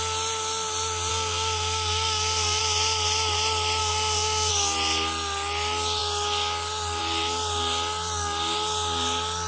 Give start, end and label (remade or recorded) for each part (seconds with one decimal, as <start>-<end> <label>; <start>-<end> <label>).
0.0-1.1 recorded; 1.1-2.6 remade; 2.6-3.8 recorded; 3.8-4.5 remade; 4.5-9.5 recorded